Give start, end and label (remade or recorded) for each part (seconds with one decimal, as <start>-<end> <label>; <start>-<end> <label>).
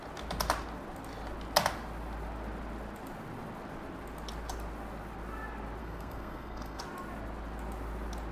0.0-5.8 recorded; 5.8-6.8 remade; 6.8-8.3 recorded